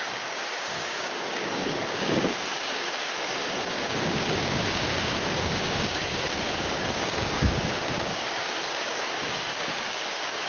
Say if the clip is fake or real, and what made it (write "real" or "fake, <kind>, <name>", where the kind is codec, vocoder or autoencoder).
fake, codec, DAC